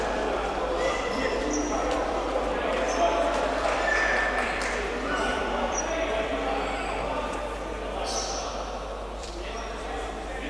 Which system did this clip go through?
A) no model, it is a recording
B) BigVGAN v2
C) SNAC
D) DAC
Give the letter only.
B